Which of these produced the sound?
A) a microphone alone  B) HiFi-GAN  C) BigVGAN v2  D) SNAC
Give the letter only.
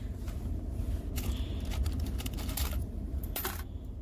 C